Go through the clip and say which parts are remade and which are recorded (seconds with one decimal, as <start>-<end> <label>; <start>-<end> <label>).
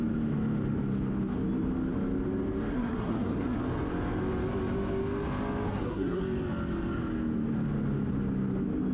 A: 0.0-2.7 recorded; 2.7-3.6 remade; 3.6-5.7 recorded; 5.7-6.2 remade; 6.2-8.9 recorded